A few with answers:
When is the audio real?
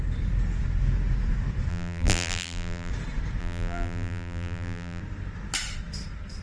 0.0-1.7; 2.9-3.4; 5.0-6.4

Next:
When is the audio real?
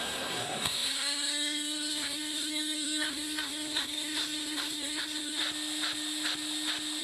5.4-7.0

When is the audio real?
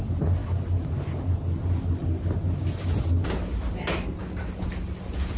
0.0-5.4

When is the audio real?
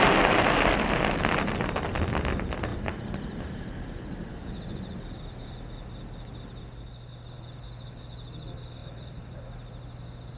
0.0-2.7; 4.4-8.8; 9.4-10.4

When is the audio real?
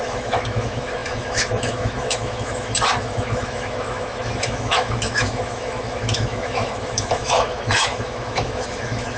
none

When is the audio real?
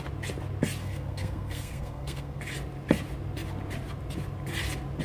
0.0-0.8; 2.4-5.0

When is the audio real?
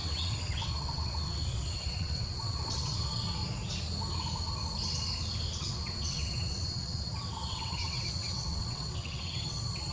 3.4-5.6